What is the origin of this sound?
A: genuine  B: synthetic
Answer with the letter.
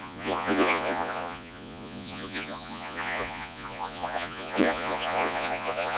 B